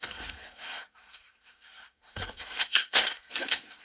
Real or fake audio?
fake